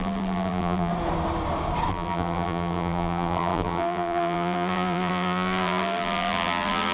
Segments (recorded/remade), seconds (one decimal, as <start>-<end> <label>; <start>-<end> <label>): 0.0-0.9 remade; 0.9-1.9 recorded; 1.9-6.9 remade